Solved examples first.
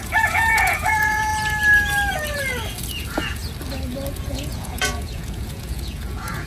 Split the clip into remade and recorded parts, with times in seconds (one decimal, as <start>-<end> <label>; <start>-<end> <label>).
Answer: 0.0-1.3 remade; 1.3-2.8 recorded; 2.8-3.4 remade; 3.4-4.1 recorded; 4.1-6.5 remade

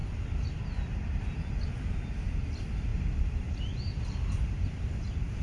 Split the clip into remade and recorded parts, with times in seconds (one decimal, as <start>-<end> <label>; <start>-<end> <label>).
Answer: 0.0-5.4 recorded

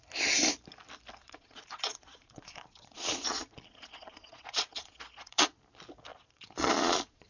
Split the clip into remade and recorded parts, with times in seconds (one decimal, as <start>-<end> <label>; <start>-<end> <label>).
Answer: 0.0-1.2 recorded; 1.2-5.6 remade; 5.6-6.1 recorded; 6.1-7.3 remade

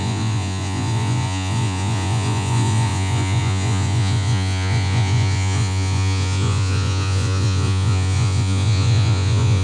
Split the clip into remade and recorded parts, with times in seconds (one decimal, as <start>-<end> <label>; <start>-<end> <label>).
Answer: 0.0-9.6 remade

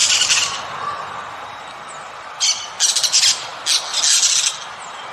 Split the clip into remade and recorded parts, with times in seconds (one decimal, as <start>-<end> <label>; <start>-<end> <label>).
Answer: 0.0-5.1 recorded

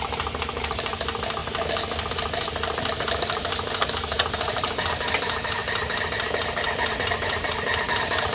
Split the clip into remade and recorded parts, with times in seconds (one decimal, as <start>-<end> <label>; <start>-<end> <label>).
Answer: 0.0-1.4 remade; 1.4-2.1 recorded; 2.1-5.6 remade; 5.6-6.9 recorded; 6.9-8.3 remade

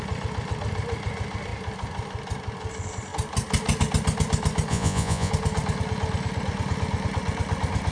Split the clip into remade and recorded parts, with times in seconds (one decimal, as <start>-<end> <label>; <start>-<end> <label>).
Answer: 0.0-4.7 recorded; 4.7-5.3 remade; 5.3-7.9 recorded